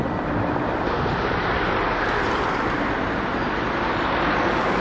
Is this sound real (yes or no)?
yes